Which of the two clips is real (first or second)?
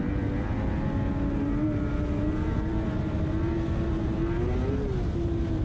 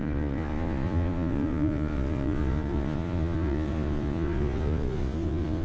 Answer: first